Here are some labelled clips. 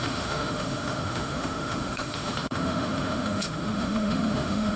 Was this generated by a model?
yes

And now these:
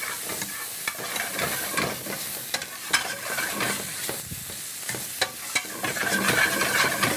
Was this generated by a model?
no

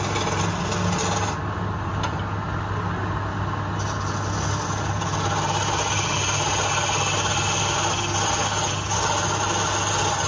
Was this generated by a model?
no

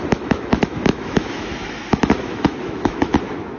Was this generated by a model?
yes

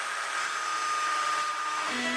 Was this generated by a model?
yes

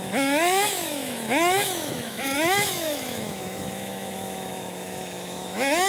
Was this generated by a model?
yes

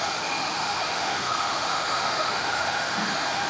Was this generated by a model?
yes